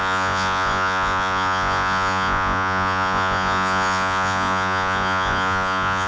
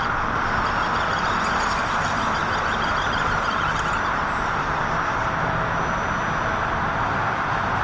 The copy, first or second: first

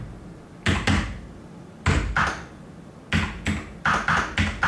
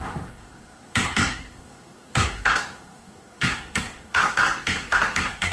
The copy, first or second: second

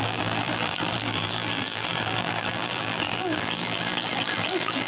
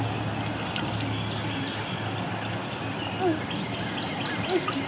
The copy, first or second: first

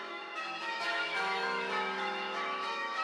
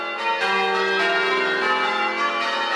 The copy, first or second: first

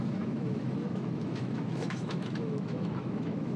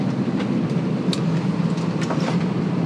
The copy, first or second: first